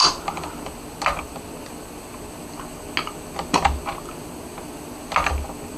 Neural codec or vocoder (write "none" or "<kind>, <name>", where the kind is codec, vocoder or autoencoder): none